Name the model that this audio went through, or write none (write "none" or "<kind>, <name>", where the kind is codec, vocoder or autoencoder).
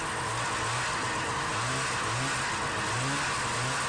none